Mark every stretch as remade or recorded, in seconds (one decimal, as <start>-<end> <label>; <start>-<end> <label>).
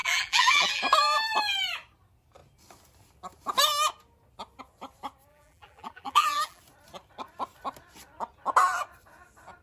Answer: 0.0-0.8 remade; 0.8-5.3 recorded; 5.3-6.6 remade; 6.6-9.6 recorded